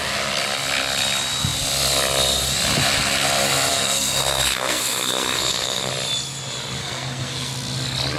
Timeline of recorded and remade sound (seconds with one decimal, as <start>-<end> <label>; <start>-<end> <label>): 0.0-3.7 recorded; 3.7-5.9 remade; 5.9-6.8 recorded; 6.8-7.5 remade; 7.5-8.2 recorded